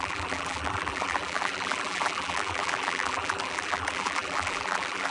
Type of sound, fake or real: fake